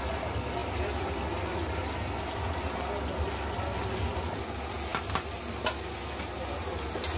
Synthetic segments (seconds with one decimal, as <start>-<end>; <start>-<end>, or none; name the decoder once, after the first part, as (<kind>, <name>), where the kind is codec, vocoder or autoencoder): none